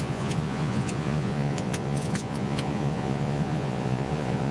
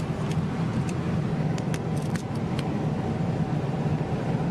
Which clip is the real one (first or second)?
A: second